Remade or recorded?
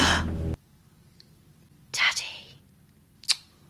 recorded